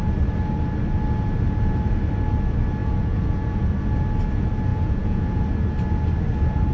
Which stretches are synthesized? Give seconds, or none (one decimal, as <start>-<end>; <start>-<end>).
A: 2.8-3.7; 4.7-5.4